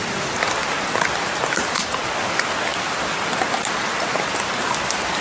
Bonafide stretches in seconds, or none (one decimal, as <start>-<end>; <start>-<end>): 0.0-5.2